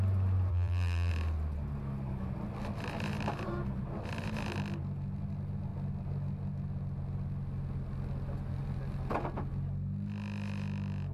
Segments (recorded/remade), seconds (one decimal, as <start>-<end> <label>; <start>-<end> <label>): 0.0-0.5 recorded; 0.5-1.1 remade; 1.1-11.1 recorded